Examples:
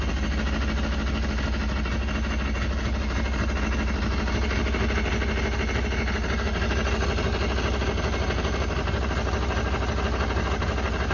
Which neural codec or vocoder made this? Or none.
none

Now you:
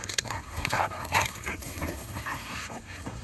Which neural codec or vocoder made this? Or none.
codec, SNAC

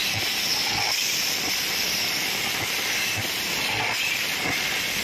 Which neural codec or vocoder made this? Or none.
none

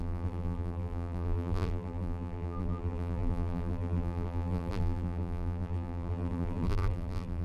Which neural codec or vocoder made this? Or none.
vocoder, BigVGAN v2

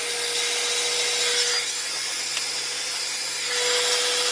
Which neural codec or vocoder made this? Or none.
none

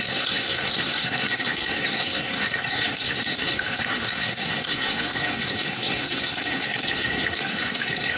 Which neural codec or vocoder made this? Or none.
codec, SNAC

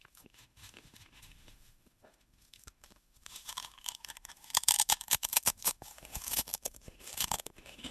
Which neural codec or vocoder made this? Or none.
autoencoder, DAC-VAE